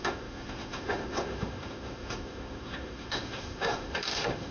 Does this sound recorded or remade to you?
remade